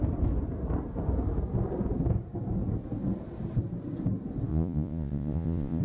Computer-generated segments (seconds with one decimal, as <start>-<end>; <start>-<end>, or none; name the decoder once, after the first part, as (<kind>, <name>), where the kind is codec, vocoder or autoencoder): 4.5-5.8 (vocoder, Vocos)